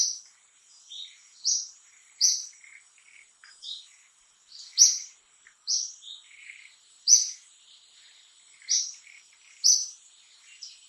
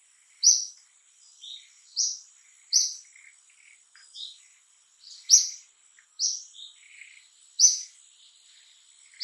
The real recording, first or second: second